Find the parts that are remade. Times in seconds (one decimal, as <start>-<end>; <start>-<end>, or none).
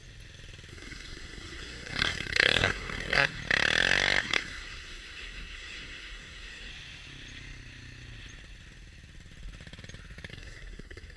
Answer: 0.7-3.4; 4.2-6.7; 10.3-11.2